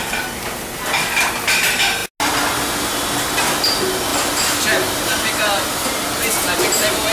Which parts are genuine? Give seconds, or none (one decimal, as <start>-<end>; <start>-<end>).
0.0-7.1